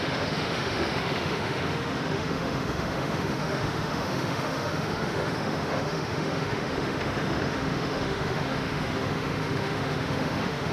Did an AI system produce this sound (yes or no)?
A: yes